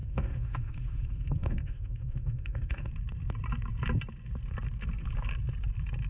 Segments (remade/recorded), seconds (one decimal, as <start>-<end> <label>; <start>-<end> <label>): 0.0-2.9 remade; 2.9-6.1 recorded